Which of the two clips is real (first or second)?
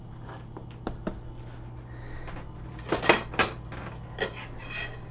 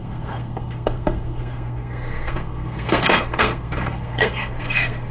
first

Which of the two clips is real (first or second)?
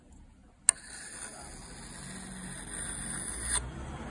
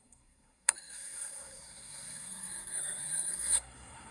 first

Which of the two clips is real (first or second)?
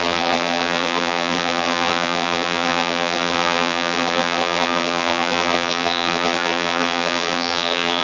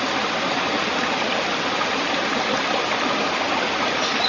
second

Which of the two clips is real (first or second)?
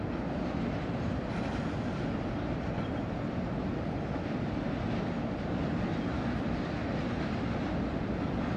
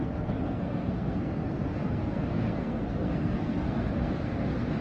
first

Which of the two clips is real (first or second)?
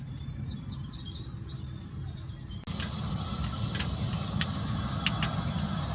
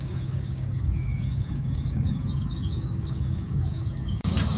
first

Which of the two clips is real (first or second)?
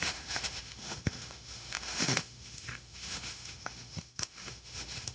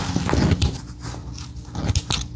second